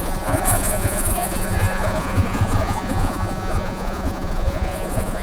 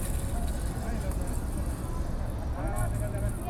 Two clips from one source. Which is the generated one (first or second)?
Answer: first